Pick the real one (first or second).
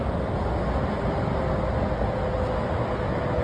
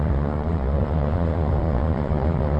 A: first